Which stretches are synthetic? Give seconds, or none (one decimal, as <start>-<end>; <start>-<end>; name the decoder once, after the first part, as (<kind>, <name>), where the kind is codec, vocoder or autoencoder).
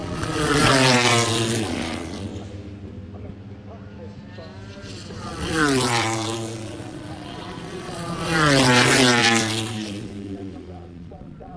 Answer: 0.0-2.3 (vocoder, Vocos); 5.2-11.6